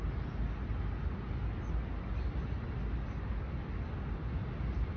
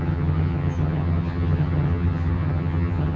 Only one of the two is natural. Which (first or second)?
first